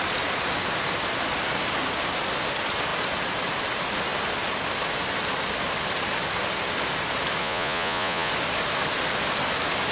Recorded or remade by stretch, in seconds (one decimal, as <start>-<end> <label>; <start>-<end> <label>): 0.0-7.4 recorded; 7.4-8.3 remade; 8.3-9.9 recorded